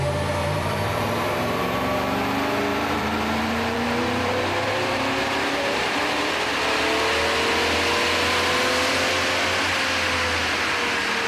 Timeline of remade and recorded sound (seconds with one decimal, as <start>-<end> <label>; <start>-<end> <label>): 0.0-0.4 recorded; 0.4-1.6 remade; 1.6-2.7 recorded; 2.7-6.6 remade; 6.6-11.3 recorded